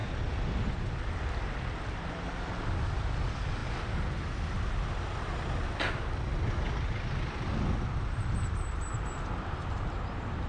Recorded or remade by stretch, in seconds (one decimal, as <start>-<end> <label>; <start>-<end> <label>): 0.0-10.5 recorded